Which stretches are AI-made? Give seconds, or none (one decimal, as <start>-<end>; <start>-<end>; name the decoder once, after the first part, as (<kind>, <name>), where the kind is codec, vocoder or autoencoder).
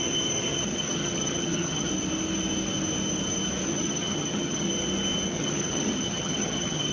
0.5-1.9 (vocoder, HiFi-GAN); 3.7-4.7; 5.3-6.9